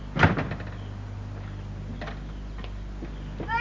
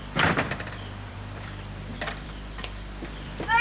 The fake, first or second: second